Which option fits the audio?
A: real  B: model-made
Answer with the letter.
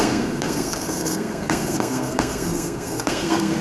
B